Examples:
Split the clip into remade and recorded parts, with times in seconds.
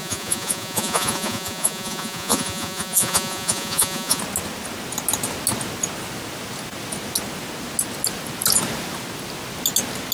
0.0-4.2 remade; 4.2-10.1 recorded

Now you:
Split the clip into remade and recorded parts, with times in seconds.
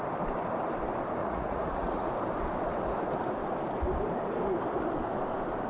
0.0-1.2 recorded; 1.2-2.1 remade; 2.1-5.7 recorded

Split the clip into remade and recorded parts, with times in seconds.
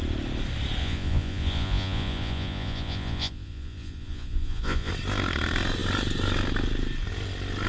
0.0-0.8 recorded; 0.8-4.9 remade; 4.9-7.7 recorded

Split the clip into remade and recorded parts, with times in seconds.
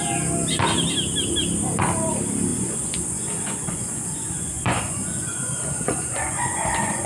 0.0-2.5 recorded; 2.5-7.1 remade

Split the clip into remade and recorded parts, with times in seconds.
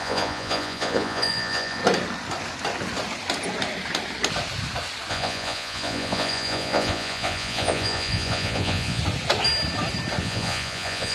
0.0-1.8 remade; 1.8-5.1 recorded; 5.1-9.0 remade; 9.0-10.2 recorded; 10.2-11.1 remade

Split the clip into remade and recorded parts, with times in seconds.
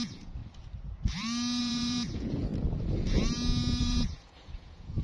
0.0-0.4 remade; 0.4-1.6 recorded; 1.6-2.5 remade; 2.5-3.8 recorded; 3.8-5.0 remade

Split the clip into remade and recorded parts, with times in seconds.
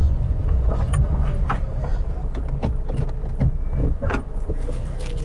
0.0-1.4 remade; 1.4-3.8 recorded; 3.8-4.5 remade; 4.5-5.2 recorded